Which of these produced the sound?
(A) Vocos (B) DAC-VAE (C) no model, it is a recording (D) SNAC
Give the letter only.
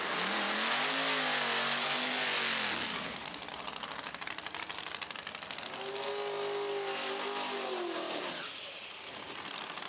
C